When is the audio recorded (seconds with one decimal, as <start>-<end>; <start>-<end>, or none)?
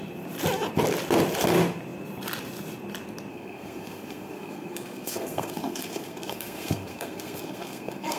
0.0-3.3